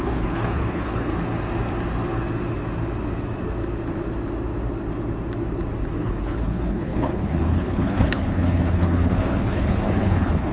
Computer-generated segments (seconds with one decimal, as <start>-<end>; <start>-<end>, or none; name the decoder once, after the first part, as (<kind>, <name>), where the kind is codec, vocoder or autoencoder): 0.0-1.1 (codec, HILCodec); 5.9-10.5